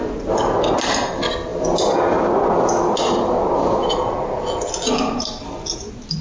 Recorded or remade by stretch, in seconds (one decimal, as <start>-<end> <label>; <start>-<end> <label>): 0.0-6.2 recorded